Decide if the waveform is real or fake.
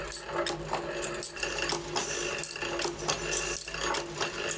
real